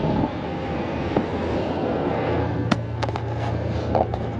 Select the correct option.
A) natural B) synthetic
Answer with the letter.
B